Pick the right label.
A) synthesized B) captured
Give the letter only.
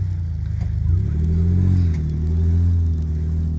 B